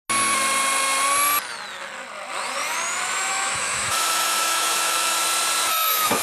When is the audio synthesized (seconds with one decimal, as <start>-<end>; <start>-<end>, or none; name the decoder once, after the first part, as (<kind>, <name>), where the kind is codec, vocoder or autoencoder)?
3.3-5.2 (autoencoder, DAC-VAE); 5.7-6.2